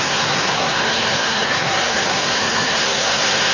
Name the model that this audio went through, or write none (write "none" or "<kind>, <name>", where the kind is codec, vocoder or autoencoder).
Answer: codec, SNAC